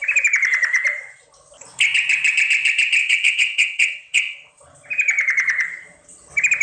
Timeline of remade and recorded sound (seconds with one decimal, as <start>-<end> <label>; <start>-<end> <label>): 0.0-3.0 recorded; 3.0-4.5 remade; 4.5-6.6 recorded